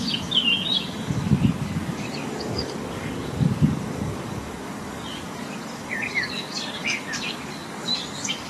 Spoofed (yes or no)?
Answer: yes